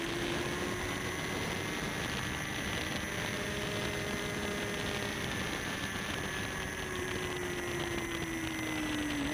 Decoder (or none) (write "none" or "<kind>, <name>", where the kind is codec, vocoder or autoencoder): none